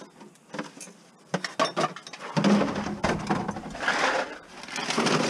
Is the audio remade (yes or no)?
no